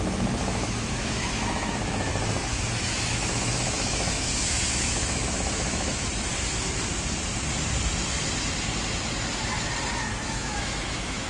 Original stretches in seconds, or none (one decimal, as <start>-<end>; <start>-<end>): 2.1-2.8; 6.3-10.3